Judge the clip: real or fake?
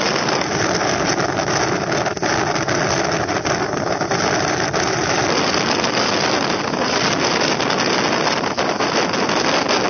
real